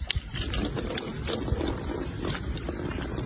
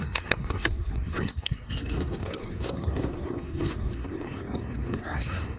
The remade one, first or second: second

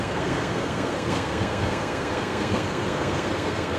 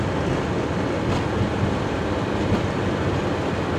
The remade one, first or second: first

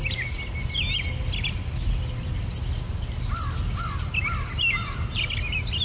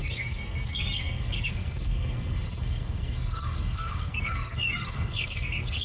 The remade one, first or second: second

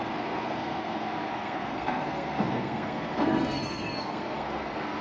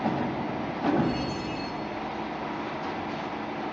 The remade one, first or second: first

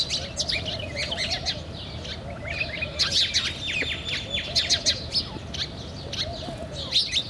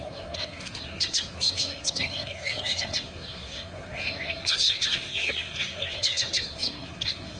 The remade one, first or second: second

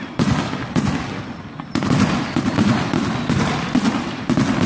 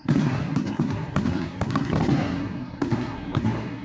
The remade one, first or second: second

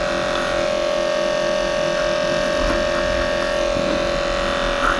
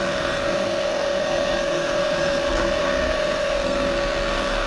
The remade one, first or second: second